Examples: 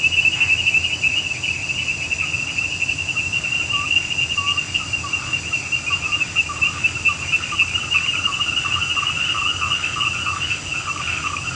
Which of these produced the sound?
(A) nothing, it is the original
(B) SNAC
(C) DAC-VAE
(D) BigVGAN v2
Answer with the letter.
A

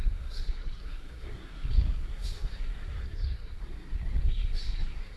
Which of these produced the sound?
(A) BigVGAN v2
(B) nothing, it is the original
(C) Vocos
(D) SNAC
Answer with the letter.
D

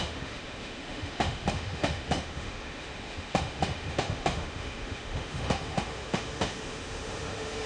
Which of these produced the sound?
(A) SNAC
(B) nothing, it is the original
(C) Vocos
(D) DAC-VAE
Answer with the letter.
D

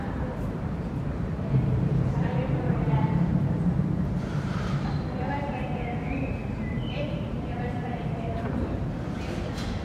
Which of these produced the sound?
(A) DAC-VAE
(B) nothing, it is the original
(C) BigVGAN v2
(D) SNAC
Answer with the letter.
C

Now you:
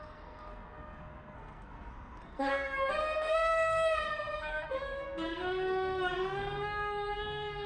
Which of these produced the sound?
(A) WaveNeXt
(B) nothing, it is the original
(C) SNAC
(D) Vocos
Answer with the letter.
C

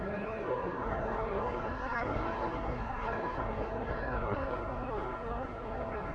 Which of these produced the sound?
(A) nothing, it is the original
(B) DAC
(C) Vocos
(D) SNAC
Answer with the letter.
D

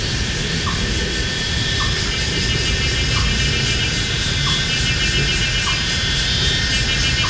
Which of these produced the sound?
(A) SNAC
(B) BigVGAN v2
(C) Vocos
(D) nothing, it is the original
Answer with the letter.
D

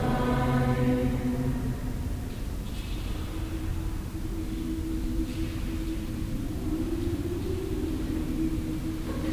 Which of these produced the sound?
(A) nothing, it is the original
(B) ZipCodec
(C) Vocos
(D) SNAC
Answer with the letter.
A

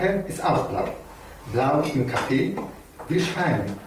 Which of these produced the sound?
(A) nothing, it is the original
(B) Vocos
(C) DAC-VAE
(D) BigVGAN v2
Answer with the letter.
A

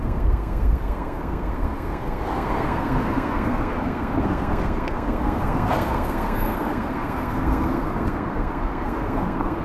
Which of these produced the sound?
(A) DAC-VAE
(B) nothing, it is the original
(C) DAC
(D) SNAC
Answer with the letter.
D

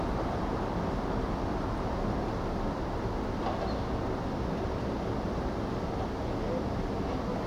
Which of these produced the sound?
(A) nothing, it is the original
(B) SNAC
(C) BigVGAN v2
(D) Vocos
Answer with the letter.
A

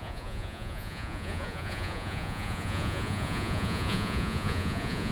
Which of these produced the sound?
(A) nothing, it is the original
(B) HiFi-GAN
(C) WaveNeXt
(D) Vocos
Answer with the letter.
D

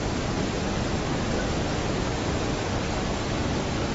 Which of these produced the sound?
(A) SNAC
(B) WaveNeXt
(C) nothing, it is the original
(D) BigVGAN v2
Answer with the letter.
C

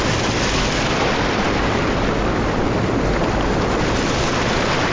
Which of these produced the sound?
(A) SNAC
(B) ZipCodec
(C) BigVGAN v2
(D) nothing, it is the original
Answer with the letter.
D